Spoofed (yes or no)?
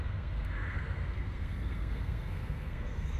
yes